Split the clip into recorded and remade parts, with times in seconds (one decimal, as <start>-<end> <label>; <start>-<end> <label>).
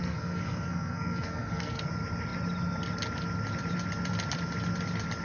0.0-1.9 remade; 1.9-5.2 recorded